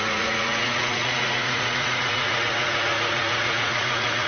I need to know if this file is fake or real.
fake